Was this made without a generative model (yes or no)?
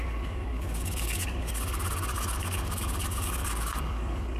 no